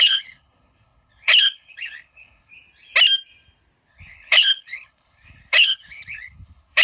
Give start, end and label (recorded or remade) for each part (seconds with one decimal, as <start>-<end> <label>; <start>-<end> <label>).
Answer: 0.0-2.5 remade; 2.5-3.9 recorded; 3.9-6.8 remade

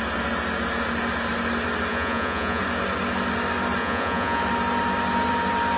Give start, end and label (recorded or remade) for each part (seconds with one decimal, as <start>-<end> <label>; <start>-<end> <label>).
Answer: 0.0-1.9 recorded; 1.9-2.6 remade; 2.6-3.8 recorded; 3.8-4.4 remade; 4.4-5.8 recorded

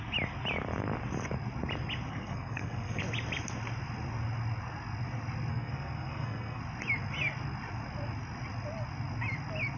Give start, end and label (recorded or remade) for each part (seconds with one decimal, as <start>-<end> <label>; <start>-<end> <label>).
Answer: 0.0-2.1 recorded; 2.1-3.0 remade; 3.0-5.5 recorded; 5.5-6.6 remade; 6.6-9.8 recorded

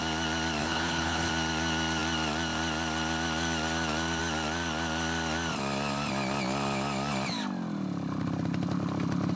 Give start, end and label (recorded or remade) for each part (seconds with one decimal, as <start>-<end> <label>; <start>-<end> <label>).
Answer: 0.0-0.6 recorded; 0.6-1.3 remade; 1.3-9.4 recorded

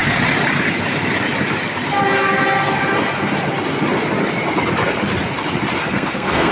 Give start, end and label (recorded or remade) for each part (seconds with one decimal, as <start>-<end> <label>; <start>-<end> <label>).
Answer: 0.0-5.8 recorded; 5.8-6.5 remade